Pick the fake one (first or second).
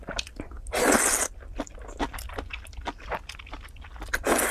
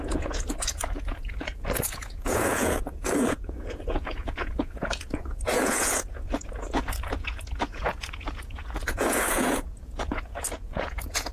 second